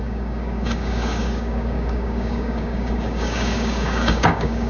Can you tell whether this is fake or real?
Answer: fake